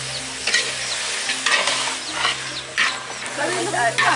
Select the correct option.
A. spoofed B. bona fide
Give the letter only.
B